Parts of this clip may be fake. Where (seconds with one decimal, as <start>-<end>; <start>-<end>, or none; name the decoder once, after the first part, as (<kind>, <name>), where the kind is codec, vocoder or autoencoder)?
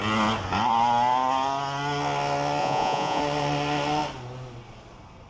2.6-3.2 (vocoder, Vocos)